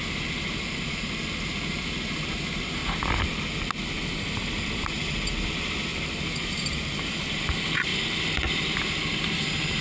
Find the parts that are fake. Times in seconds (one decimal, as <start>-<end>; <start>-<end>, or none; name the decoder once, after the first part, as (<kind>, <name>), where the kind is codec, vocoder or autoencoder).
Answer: 0.0-2.8 (vocoder, BigVGAN v2); 5.5-7.9